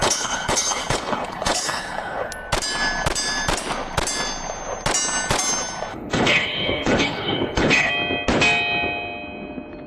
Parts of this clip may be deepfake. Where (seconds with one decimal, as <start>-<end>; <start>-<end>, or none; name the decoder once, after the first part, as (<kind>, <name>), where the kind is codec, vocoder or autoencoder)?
0.0-2.3 (codec, HILCodec); 5.9-7.9